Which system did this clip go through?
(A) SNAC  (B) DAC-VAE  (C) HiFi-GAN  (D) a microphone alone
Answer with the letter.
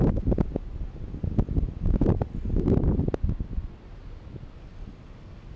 D